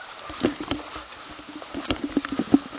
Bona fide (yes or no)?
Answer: no